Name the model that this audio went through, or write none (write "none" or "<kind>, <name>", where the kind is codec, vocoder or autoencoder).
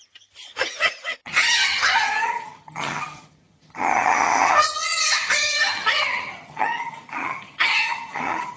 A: vocoder, HiFi-GAN